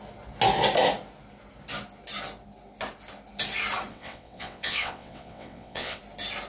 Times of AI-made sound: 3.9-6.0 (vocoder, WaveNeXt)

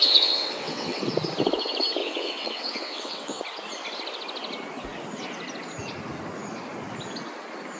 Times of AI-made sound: 0.0-1.0 (vocoder, WaveNeXt); 2.0-3.4

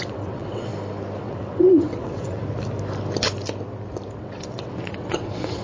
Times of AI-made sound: 0.0-0.7 (vocoder, WaveNeXt); 1.2-2.4; 4.2-5.6

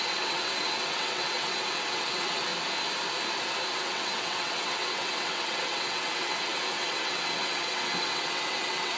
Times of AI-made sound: 0.0-2.5 (vocoder, WaveNeXt); 3.7-9.0

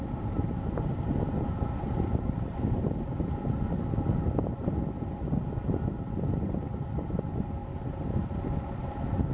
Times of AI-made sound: none

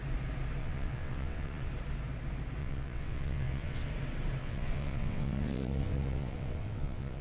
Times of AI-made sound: 0.6-1.7 (vocoder, WaveNeXt); 2.6-3.9; 4.4-7.2